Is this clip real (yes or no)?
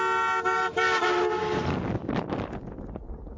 yes